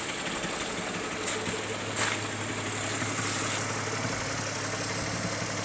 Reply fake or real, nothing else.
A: real